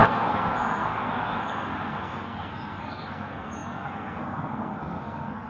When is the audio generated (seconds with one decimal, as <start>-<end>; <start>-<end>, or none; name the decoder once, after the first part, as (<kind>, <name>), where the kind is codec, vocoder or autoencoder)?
0.0-5.5 (codec, SNAC)

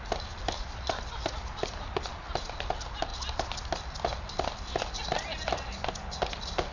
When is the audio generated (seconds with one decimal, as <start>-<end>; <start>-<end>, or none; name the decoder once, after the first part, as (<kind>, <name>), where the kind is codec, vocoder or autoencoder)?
none

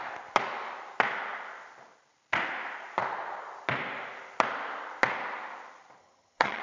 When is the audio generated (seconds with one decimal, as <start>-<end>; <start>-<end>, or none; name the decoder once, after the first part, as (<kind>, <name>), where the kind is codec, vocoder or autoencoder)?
6.0-6.6 (vocoder, HiFi-GAN)

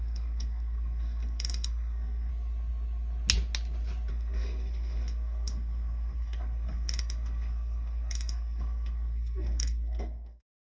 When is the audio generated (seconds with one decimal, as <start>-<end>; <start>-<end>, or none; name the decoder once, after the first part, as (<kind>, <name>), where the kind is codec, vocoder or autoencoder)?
0.0-2.3 (codec, SNAC); 4.1-10.6

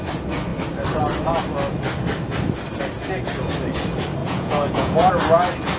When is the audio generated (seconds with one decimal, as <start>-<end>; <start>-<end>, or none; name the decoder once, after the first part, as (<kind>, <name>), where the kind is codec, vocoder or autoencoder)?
4.2-5.1 (vocoder, Vocos)

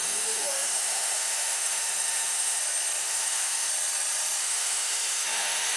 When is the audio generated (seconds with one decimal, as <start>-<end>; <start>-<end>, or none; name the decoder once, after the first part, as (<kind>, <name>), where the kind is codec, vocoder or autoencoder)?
0.0-2.6 (autoencoder, DAC-VAE); 3.0-3.7; 4.4-5.8